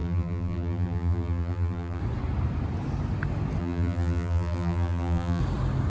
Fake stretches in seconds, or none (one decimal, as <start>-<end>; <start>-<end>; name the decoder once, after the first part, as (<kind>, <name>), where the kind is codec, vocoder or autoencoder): 0.0-2.0 (vocoder, BigVGAN v2); 3.6-5.4